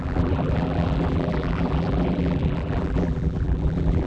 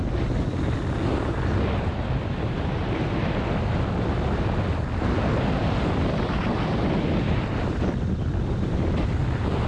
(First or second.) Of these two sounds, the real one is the second